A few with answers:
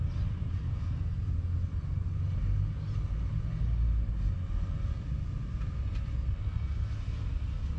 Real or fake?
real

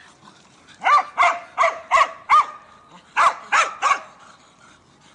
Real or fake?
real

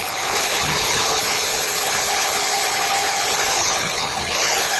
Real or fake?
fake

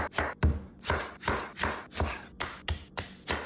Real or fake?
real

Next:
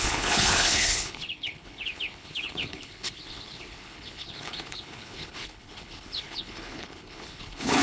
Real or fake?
fake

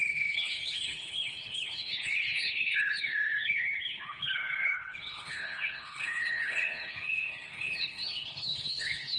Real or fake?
fake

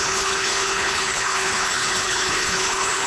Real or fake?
fake